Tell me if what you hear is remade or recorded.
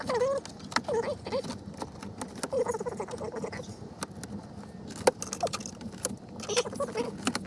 recorded